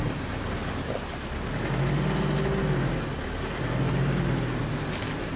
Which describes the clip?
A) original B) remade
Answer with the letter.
A